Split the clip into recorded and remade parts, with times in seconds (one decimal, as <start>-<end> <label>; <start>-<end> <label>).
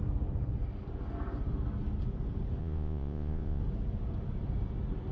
0.0-2.6 recorded; 2.6-3.6 remade; 3.6-5.1 recorded